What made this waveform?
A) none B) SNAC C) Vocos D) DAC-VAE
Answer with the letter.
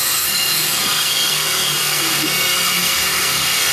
B